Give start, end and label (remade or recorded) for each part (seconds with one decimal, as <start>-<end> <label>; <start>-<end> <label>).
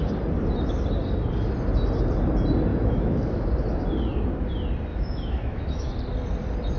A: 0.0-2.7 recorded; 2.7-3.5 remade; 3.5-4.9 recorded; 4.9-5.9 remade; 5.9-6.8 recorded